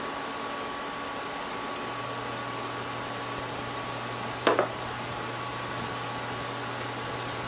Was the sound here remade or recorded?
recorded